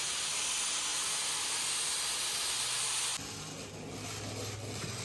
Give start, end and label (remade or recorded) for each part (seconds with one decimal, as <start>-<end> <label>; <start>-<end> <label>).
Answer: 0.0-5.0 recorded